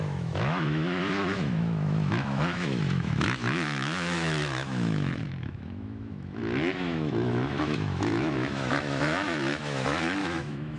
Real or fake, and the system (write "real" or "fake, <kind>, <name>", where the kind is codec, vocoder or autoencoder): fake, autoencoder, DAC-VAE